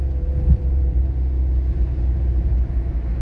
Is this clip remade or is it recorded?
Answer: recorded